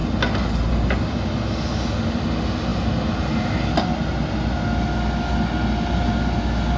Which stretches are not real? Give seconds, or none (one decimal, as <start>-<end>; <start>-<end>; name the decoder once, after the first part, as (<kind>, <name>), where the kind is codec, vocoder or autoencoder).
none